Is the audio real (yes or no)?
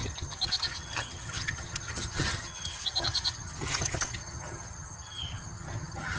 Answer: no